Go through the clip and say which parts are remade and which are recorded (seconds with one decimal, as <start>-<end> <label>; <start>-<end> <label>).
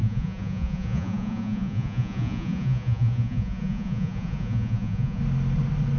0.0-5.2 remade; 5.2-6.0 recorded